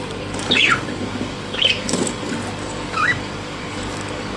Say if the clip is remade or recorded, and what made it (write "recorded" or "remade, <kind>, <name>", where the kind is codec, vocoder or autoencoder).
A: remade, codec, DAC